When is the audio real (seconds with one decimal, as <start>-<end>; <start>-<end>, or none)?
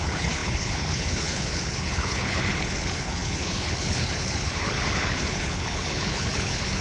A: none